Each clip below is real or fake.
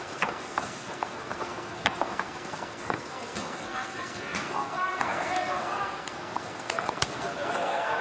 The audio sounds fake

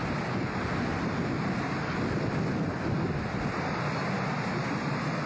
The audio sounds real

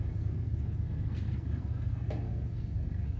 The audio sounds fake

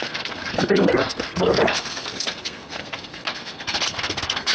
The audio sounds fake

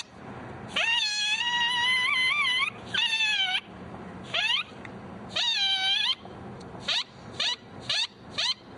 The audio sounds real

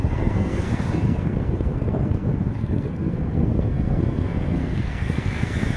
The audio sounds fake